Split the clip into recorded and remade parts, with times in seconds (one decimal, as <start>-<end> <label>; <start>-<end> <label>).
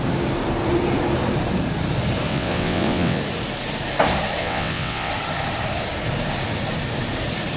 0.0-2.3 recorded; 2.3-3.2 remade; 3.2-4.4 recorded; 4.4-5.1 remade; 5.1-7.6 recorded